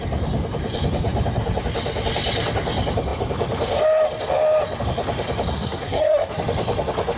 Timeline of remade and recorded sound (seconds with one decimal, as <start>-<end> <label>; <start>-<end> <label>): 0.0-5.5 recorded; 5.5-6.3 remade; 6.3-7.2 recorded